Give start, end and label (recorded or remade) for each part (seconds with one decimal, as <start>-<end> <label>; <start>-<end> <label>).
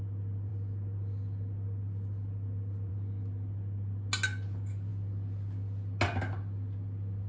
0.0-7.3 recorded